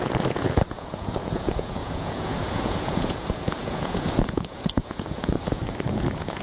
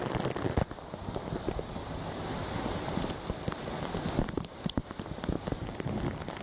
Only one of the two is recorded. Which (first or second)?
second